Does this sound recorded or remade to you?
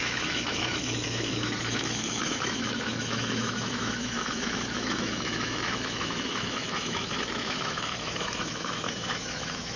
remade